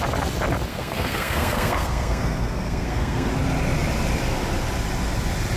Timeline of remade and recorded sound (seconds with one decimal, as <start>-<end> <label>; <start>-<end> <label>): 0.0-0.7 recorded; 0.7-3.3 remade; 3.3-5.6 recorded